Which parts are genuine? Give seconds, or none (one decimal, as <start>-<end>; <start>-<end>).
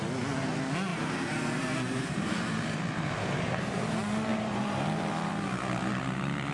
0.0-0.9; 3.8-4.3; 5.3-6.5